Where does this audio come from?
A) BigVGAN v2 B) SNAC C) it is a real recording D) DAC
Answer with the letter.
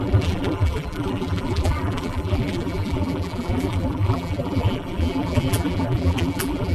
A